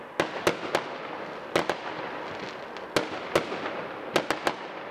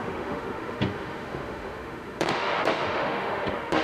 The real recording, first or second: first